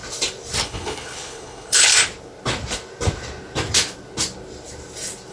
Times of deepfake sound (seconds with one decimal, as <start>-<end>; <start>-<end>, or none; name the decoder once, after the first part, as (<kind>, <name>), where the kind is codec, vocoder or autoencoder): 0.6-1.9 (codec, HILCodec)